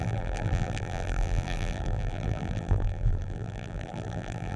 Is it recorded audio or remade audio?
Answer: remade